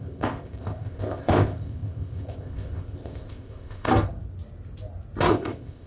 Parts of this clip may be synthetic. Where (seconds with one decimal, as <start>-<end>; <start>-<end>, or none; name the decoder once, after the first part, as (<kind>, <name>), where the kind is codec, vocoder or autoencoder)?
0.0-3.9 (codec, ZipCodec); 5.3-5.9